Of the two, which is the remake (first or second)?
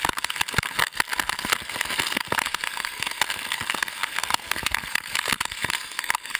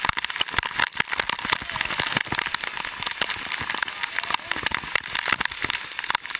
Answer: first